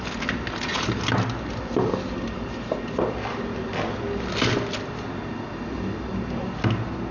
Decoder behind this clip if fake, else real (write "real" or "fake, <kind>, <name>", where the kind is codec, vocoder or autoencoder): real